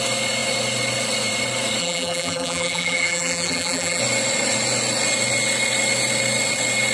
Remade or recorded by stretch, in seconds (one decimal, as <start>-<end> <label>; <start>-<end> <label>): 0.0-1.8 recorded; 1.8-4.0 remade; 4.0-6.9 recorded